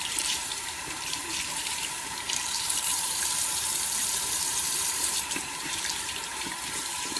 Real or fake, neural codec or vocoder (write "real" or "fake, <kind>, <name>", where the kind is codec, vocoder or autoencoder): fake, vocoder, BigVGAN v2